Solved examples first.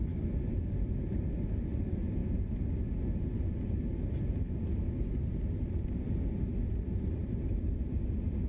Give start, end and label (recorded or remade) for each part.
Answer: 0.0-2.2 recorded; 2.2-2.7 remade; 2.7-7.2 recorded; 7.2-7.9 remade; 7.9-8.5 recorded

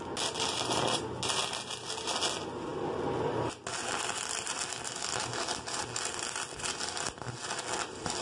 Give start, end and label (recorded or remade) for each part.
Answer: 0.0-8.2 recorded